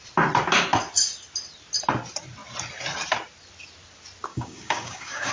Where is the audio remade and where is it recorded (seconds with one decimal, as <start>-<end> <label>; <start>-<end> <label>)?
0.0-4.3 recorded; 4.3-5.3 remade